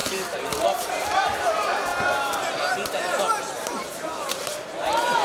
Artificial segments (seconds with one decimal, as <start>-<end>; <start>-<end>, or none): 0.0-1.9; 3.8-5.2